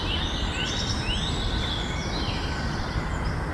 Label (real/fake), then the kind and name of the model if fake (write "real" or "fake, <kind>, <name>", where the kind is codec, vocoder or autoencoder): real